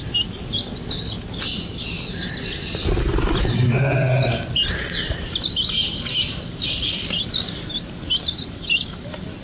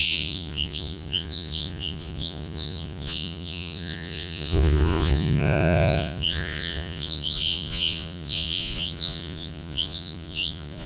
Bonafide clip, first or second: first